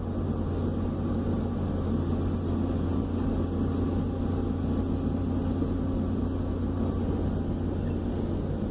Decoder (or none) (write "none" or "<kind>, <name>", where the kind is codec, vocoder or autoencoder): none